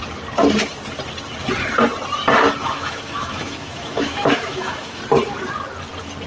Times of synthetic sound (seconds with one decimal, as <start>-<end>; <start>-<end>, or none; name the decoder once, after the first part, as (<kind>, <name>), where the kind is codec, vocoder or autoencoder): 2.6-5.0 (autoencoder, DAC-VAE)